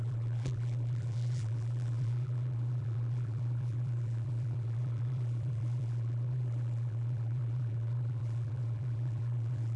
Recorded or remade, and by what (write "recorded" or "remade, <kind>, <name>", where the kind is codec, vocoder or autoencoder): remade, vocoder, BigVGAN v2